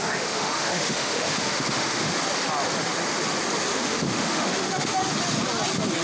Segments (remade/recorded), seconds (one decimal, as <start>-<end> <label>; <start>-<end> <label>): 0.0-2.1 remade; 2.1-3.7 recorded; 3.7-5.0 remade; 5.0-6.0 recorded